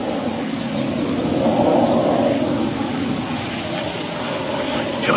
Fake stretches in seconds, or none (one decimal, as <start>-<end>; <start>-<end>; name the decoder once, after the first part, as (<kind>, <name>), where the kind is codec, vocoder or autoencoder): 0.0-0.7 (codec, DAC); 1.7-4.8